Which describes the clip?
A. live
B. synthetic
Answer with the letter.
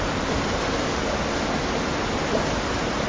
A